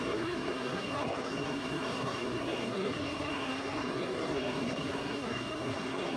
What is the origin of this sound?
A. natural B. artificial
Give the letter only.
B